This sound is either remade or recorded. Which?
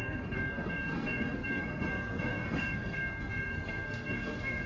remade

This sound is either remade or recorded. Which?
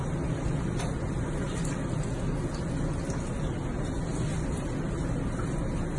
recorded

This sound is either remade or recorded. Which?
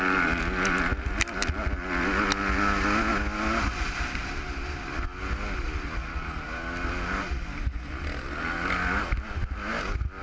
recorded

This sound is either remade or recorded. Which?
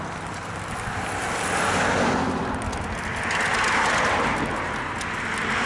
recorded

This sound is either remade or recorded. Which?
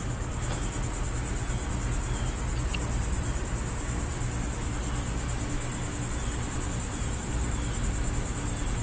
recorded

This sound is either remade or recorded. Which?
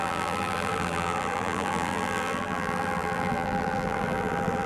remade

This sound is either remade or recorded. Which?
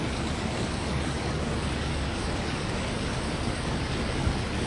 remade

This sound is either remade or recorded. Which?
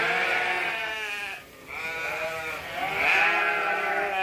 recorded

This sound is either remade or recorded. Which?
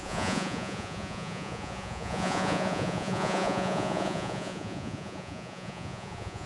remade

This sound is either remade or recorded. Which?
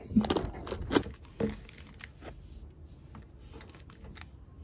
recorded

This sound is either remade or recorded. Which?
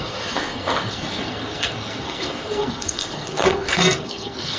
remade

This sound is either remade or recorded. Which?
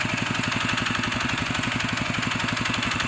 remade